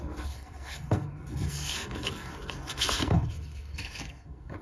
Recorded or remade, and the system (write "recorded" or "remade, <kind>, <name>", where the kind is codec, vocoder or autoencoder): remade, codec, SNAC